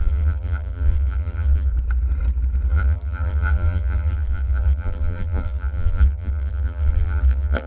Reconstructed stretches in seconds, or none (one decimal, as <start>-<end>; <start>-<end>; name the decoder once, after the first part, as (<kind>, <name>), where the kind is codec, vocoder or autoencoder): 0.0-1.7 (vocoder, BigVGAN v2); 2.7-7.7